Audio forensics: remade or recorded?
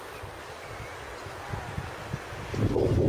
recorded